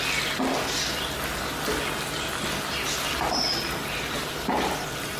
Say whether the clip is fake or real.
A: real